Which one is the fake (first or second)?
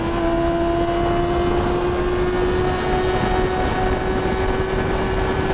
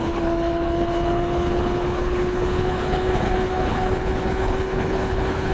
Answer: second